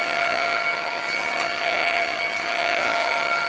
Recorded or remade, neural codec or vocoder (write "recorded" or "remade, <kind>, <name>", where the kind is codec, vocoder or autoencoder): remade, vocoder, HiFi-GAN